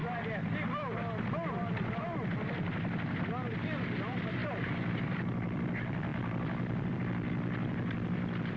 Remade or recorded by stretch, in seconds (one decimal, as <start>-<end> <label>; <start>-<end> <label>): 0.0-8.6 recorded